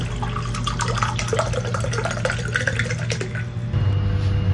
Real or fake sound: real